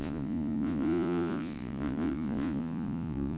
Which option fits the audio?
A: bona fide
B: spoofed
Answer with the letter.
B